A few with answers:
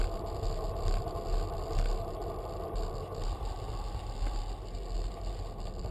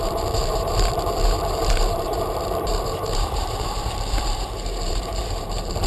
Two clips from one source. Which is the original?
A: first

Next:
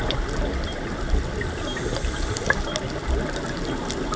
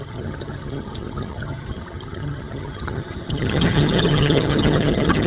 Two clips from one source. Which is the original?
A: first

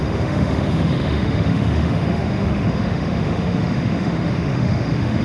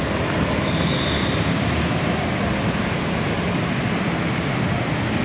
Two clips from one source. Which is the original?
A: second